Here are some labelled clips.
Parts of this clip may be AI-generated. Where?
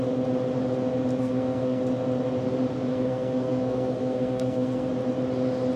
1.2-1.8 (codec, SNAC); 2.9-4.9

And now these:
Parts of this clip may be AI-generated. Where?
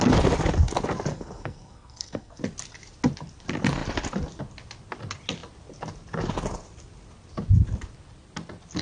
1.1-2.4 (codec, SNAC)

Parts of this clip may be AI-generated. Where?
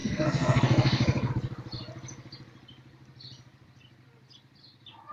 0.0-1.3 (codec, SNAC)